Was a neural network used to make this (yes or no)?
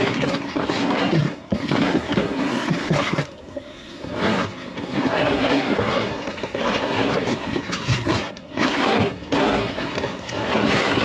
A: yes